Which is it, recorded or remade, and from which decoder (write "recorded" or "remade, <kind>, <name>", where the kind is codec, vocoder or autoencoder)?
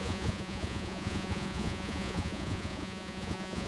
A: remade, vocoder, Vocos